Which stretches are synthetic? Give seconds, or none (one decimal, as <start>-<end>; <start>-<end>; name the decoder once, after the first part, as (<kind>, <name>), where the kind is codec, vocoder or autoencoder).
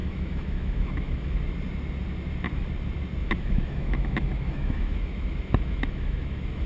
0.0-1.4 (autoencoder, DAC-VAE); 3.2-6.7